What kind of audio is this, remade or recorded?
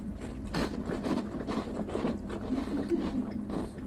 remade